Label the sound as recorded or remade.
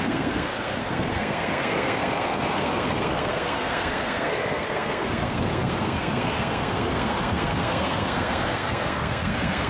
remade